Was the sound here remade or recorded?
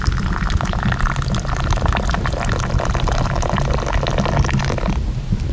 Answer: recorded